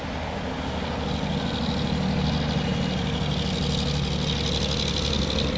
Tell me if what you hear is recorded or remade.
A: recorded